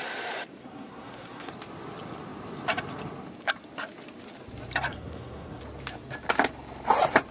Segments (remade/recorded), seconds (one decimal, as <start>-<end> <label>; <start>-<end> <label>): 0.0-0.6 recorded; 0.6-1.5 remade; 1.5-4.9 recorded; 4.9-5.6 remade; 5.6-7.3 recorded